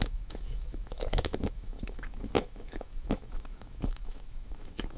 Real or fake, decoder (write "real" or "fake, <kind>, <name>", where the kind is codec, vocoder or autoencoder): fake, autoencoder, DAC-VAE